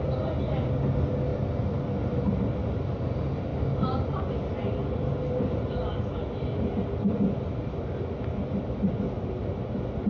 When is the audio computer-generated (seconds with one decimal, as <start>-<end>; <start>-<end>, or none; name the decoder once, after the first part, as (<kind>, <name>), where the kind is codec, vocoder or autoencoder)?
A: none